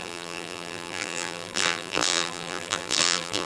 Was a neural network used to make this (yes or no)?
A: yes